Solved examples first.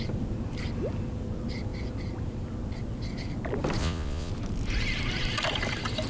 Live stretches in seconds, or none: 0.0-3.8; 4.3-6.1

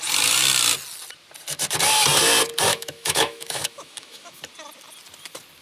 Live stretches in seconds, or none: 0.0-2.7; 4.4-5.6